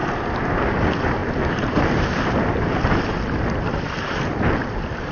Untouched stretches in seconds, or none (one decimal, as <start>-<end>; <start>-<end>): 0.0-1.2; 2.1-5.1